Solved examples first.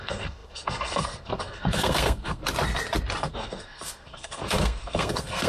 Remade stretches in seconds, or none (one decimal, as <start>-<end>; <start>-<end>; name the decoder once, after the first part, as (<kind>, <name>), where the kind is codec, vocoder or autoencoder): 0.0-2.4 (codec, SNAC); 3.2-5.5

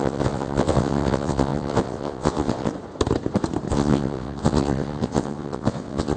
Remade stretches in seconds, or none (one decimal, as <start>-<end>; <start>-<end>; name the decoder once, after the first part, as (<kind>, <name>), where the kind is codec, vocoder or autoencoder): 0.0-2.7 (vocoder, WaveNeXt); 3.7-6.2

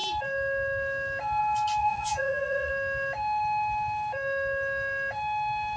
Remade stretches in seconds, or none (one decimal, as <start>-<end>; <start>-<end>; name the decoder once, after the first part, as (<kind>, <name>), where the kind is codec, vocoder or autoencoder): 1.8-2.7 (vocoder, Vocos)

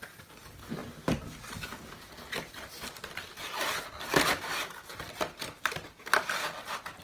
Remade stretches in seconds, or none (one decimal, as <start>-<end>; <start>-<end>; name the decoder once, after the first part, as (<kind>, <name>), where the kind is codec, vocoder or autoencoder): none